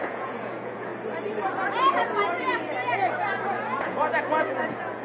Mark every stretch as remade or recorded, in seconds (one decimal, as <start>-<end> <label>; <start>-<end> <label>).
0.0-0.9 remade; 0.9-3.8 recorded; 3.8-5.0 remade